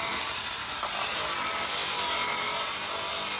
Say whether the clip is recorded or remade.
recorded